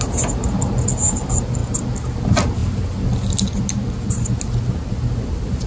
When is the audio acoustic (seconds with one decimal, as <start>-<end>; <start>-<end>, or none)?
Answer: 0.0-5.7